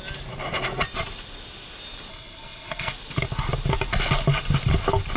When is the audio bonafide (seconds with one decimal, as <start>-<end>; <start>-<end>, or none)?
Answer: 0.0-2.1; 2.9-5.2